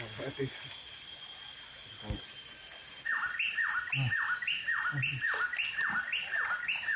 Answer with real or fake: real